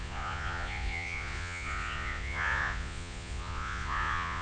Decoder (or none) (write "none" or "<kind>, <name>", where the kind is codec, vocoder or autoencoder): vocoder, Vocos